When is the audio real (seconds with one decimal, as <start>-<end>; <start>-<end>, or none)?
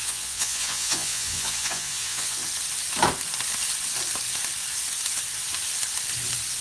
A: 2.4-6.6